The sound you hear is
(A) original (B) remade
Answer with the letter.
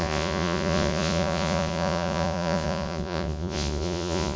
B